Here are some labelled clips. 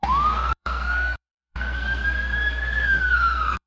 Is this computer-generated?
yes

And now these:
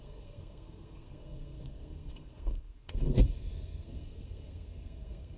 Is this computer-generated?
yes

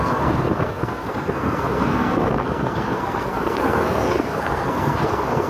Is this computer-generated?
yes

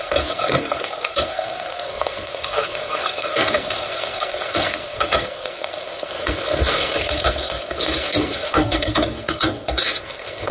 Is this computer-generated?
yes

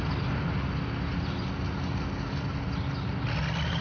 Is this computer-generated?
no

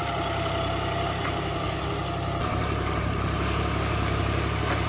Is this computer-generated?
no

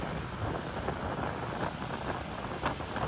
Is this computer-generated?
no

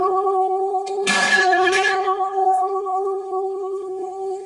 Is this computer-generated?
yes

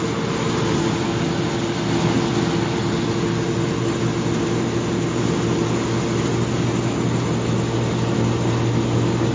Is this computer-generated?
no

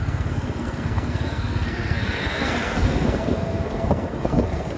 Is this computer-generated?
yes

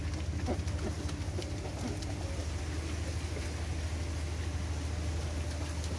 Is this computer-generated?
no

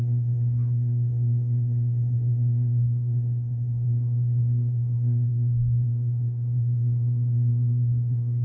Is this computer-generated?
yes